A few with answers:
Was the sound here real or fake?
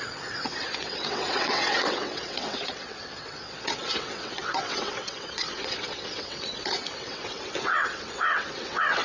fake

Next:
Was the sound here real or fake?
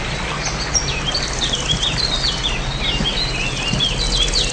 real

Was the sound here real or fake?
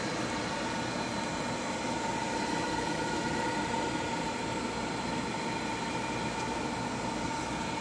real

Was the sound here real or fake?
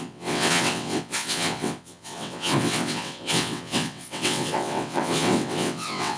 fake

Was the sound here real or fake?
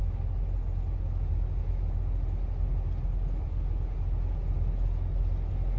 real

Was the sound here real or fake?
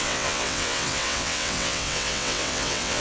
fake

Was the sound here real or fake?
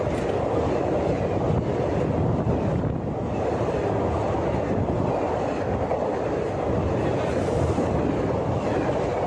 real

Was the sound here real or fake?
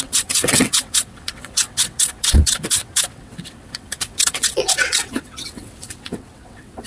fake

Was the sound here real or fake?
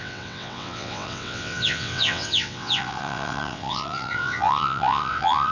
fake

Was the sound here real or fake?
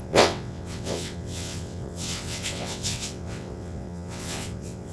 fake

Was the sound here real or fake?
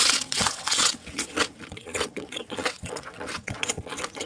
fake